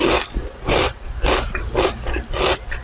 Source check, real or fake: real